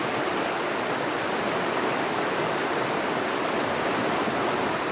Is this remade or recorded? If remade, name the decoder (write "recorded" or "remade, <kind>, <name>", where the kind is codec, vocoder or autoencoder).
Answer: recorded